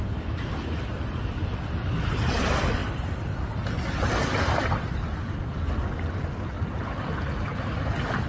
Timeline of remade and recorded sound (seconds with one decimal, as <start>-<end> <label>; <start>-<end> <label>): 0.0-8.3 recorded